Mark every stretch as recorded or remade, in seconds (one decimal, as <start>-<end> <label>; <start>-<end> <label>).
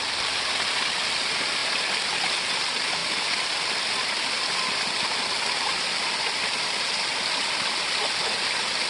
0.0-8.9 recorded